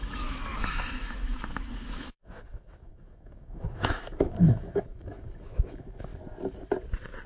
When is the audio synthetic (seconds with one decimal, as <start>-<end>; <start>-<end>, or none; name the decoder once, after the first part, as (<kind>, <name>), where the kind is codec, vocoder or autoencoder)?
0.0-6.1 (autoencoder, DAC-VAE)